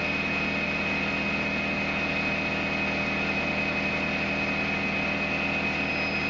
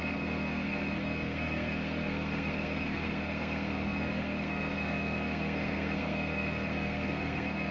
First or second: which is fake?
second